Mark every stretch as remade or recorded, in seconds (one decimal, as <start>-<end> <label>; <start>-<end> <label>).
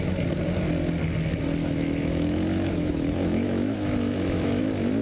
0.0-1.6 recorded; 1.6-4.6 remade; 4.6-5.0 recorded